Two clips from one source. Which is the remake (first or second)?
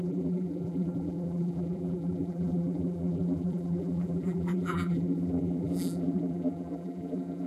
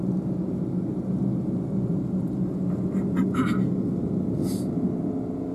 first